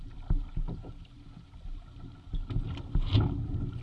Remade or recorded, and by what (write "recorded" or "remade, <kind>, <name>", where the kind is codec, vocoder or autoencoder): recorded